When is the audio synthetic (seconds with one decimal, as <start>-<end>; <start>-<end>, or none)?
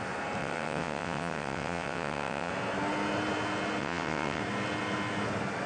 0.4-2.5; 3.8-4.4